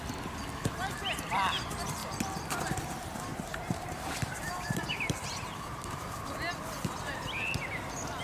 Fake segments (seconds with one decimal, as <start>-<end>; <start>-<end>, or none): 2.0-2.8; 3.3-6.3